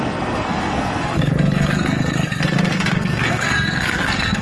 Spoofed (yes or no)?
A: yes